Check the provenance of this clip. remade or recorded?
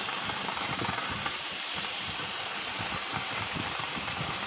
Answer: remade